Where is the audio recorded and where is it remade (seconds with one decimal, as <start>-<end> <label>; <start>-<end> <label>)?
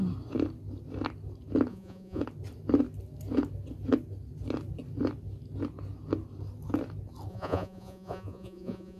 0.0-1.7 recorded; 1.7-2.2 remade; 2.2-7.3 recorded; 7.3-9.0 remade